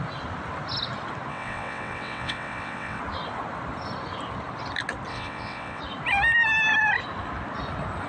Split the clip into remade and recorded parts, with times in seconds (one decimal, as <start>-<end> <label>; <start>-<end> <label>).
0.0-1.3 recorded; 1.3-3.0 remade; 3.0-5.1 recorded; 5.1-5.8 remade; 5.8-8.1 recorded